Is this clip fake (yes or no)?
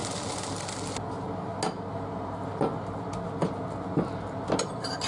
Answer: no